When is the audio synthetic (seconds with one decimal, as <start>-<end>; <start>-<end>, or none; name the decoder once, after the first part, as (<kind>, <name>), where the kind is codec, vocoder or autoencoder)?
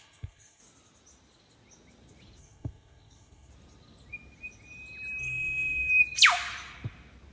0.0-0.6 (codec, SNAC); 2.4-3.5; 5.2-5.9